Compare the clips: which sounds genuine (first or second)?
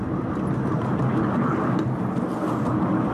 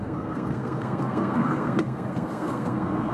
first